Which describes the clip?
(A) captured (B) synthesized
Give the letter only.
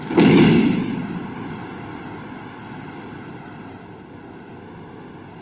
A